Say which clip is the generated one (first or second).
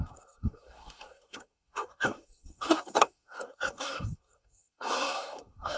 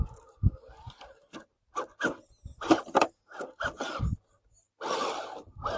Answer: first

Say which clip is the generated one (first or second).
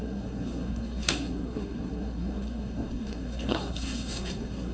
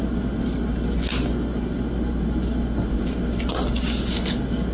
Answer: first